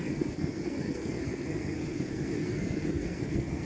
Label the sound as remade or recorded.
remade